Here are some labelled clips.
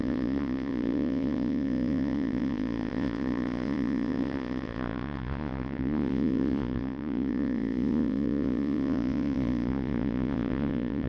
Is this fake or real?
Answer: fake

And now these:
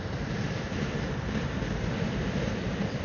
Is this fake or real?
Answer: fake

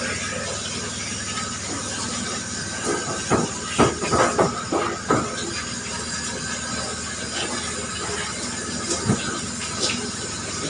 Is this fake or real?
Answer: real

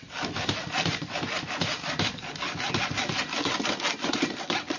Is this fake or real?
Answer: real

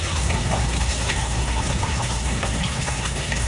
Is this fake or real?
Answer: fake